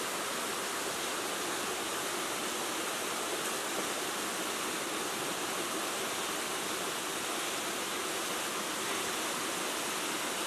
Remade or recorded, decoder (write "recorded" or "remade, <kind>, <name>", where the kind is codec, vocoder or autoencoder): recorded